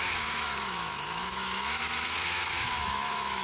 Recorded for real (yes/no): no